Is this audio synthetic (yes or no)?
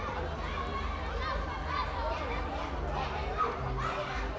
no